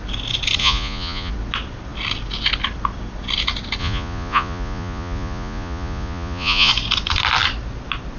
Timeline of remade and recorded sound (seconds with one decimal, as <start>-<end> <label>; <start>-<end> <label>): 0.0-0.6 recorded; 0.6-1.3 remade; 1.3-3.8 recorded; 3.8-6.7 remade; 6.7-8.2 recorded